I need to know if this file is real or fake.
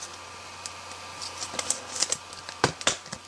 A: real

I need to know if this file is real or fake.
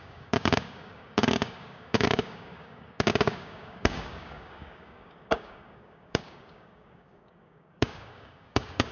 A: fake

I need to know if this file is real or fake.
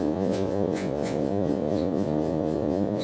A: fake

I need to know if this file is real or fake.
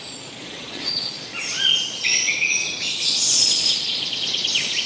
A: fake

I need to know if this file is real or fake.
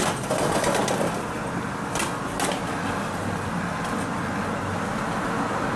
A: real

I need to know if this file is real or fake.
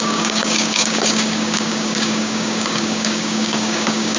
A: fake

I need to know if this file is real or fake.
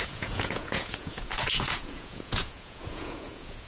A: fake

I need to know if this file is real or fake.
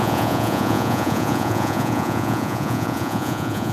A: fake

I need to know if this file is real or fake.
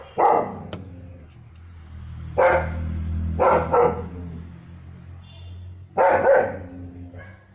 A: real